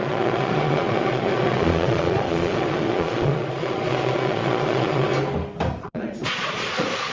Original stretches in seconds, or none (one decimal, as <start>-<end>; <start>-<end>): 5.1-5.8